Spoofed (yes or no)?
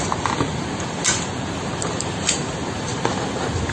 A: no